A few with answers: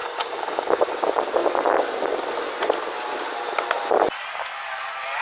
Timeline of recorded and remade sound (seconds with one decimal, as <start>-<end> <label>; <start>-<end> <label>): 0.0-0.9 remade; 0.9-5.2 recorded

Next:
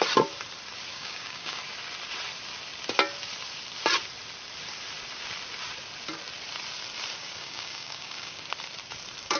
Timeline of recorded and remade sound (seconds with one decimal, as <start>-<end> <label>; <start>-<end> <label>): 0.0-0.9 recorded; 0.9-1.6 remade; 1.6-7.2 recorded; 7.2-8.4 remade; 8.4-9.4 recorded

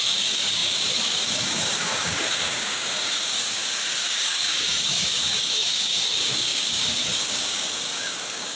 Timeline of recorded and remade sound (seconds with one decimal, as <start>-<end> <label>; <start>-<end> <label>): 0.0-8.6 remade

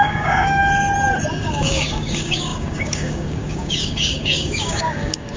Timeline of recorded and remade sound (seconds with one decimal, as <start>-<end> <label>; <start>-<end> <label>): 0.0-0.6 remade; 0.6-1.3 recorded; 1.3-5.4 remade

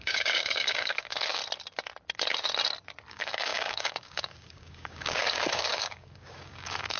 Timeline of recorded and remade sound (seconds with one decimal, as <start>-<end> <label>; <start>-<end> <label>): 0.0-1.4 remade; 1.4-3.1 recorded; 3.1-7.0 remade

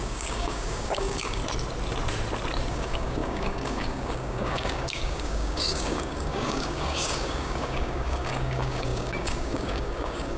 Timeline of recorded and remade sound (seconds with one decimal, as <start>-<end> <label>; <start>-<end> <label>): 0.0-1.4 remade; 1.4-2.7 recorded; 2.7-10.4 remade

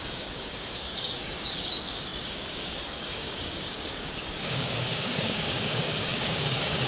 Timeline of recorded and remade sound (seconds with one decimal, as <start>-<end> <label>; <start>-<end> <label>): 0.0-6.9 remade